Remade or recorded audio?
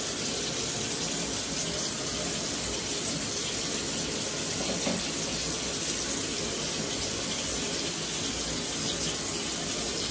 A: recorded